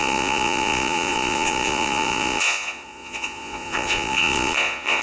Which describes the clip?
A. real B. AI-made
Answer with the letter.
B